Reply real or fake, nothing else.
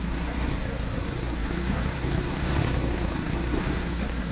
fake